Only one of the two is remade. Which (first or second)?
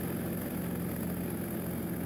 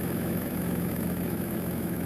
second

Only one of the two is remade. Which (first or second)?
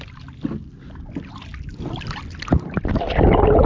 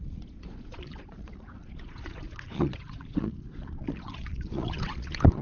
second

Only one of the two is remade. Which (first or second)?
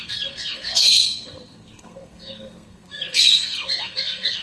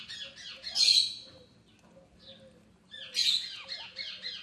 first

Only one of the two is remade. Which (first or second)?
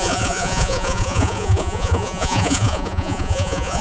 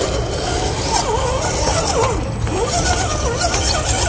first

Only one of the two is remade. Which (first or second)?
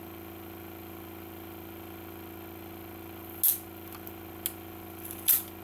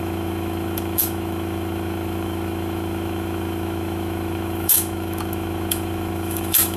second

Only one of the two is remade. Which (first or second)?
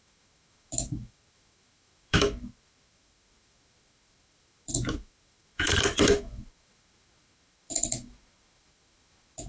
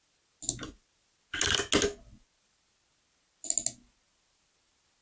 first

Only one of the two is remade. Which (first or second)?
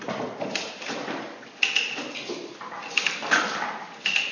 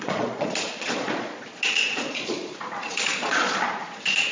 second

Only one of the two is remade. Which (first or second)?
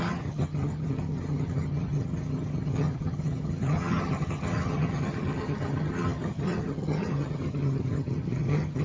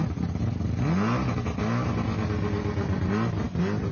first